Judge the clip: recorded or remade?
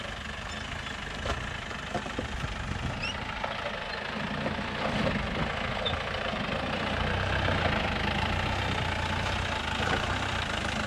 recorded